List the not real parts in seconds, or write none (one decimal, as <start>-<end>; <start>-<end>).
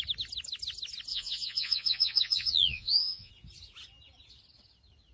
1.1-3.3